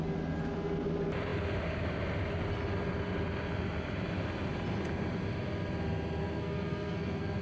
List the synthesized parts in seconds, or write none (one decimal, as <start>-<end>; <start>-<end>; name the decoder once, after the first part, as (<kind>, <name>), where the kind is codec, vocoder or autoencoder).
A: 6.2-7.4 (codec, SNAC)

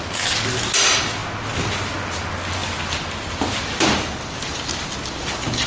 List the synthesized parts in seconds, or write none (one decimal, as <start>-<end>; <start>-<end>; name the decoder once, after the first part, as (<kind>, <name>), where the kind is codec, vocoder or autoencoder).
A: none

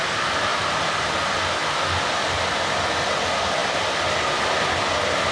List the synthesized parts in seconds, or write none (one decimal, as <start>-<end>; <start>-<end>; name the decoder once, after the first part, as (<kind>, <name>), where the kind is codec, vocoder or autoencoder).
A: 0.5-1.2 (vocoder, BigVGAN v2); 3.6-4.8